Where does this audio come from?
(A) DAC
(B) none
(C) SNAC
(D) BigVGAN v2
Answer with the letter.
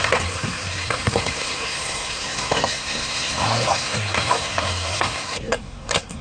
C